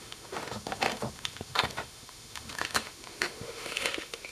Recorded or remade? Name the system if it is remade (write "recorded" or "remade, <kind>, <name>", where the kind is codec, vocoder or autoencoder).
remade, autoencoder, DAC-VAE